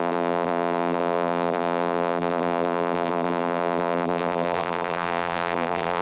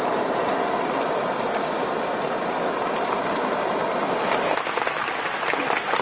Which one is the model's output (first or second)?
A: first